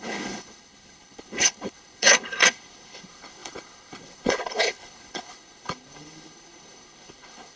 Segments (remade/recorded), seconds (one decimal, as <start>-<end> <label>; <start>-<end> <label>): 0.0-7.6 remade